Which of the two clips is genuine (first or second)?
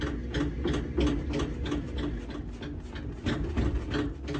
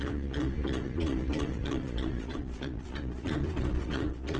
first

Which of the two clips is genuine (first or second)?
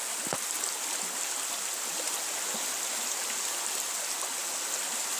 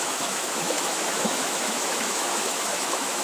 first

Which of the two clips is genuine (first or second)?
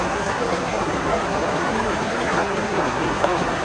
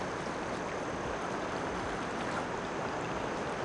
second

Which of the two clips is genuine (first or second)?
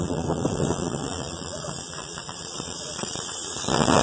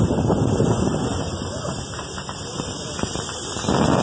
second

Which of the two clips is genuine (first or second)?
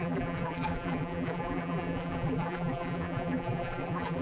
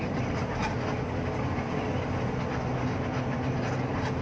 second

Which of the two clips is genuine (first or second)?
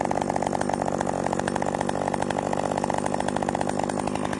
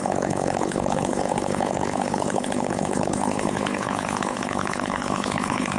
first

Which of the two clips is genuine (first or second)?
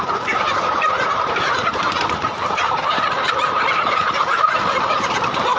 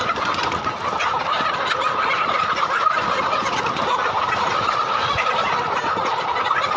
second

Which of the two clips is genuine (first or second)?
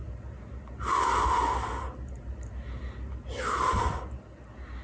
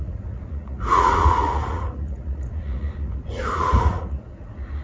first